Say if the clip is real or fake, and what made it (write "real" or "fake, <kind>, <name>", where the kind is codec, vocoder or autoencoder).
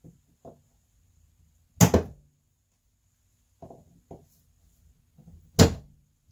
real